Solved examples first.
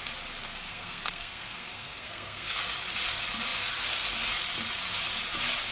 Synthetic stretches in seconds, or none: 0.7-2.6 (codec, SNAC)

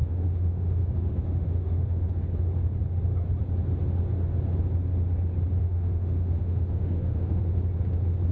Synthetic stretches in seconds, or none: 0.0-2.1 (autoencoder, DAC-VAE); 5.6-7.4

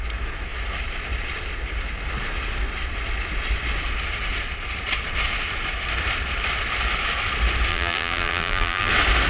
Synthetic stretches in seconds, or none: 7.7-8.9 (vocoder, BigVGAN v2)

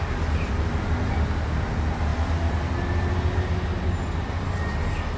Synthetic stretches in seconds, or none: none

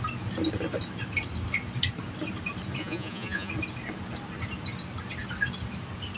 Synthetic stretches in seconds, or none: 2.8-3.5 (vocoder, Vocos)